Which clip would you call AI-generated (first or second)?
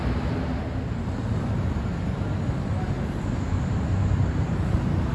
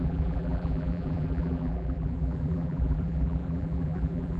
second